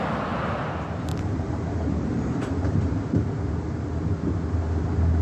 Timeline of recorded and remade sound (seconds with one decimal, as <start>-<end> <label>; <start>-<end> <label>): 0.0-1.1 recorded; 1.1-2.9 remade; 2.9-5.2 recorded